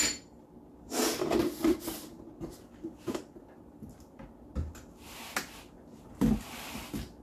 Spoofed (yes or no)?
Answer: no